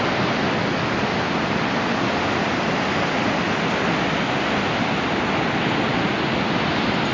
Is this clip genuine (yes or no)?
yes